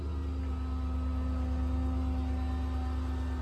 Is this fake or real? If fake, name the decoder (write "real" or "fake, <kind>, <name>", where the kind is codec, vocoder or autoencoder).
real